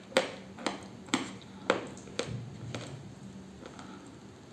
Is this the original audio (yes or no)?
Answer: yes